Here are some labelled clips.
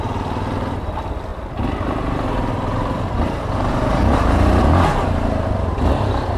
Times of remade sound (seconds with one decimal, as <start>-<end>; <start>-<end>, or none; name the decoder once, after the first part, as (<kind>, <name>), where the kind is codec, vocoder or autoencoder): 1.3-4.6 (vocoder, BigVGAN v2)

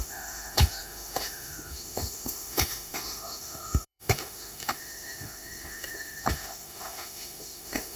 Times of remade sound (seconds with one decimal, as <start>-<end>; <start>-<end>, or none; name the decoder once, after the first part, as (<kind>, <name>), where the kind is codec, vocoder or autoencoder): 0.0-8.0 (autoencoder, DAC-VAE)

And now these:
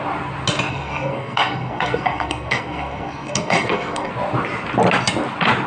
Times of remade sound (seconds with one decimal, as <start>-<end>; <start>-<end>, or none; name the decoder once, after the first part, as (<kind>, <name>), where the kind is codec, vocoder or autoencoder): 0.7-4.1 (codec, SNAC)

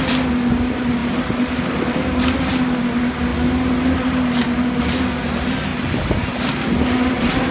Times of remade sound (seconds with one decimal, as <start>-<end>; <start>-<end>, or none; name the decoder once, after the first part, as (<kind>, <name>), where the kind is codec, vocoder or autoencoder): none

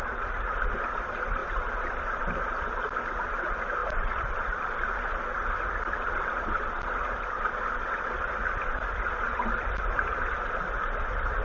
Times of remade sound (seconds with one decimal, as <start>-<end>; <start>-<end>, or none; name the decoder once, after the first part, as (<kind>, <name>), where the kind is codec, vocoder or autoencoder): 3.8-4.4 (vocoder, BigVGAN v2); 8.4-10.3